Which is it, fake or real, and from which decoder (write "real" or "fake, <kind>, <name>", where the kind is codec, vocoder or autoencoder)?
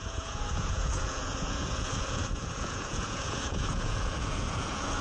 fake, vocoder, Vocos